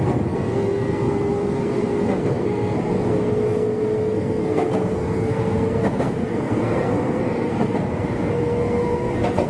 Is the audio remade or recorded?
remade